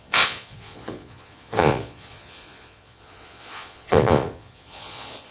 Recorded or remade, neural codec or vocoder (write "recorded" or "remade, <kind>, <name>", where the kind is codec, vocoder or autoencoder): remade, vocoder, Vocos